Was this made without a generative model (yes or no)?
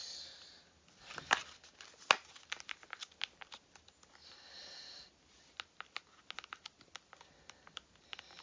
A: yes